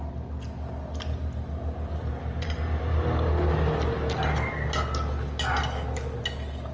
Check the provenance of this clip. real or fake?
real